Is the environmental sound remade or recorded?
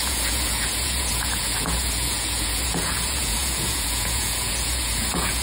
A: remade